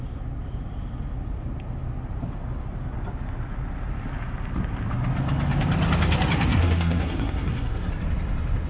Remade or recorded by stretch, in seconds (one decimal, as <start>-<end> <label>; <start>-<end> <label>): 0.0-6.5 recorded; 6.5-7.9 remade; 7.9-8.7 recorded

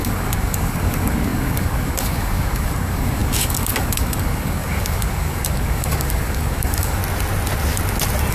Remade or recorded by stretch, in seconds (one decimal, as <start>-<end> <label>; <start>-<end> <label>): 0.0-7.0 remade; 7.0-8.3 recorded

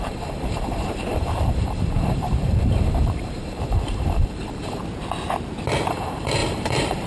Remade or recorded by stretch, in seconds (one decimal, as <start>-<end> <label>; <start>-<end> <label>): 0.0-4.8 remade; 4.8-5.9 recorded; 5.9-7.1 remade